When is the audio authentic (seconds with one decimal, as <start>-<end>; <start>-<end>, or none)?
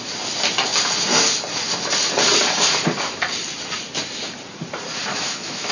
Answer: 0.0-5.1